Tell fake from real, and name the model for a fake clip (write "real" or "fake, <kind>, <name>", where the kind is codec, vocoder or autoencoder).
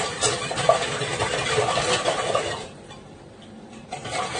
real